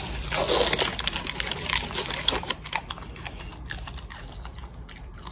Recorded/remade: recorded